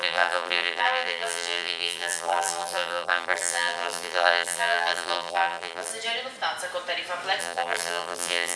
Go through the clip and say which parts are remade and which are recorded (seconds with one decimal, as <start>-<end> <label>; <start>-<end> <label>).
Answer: 0.0-5.9 remade; 5.9-7.4 recorded; 7.4-8.6 remade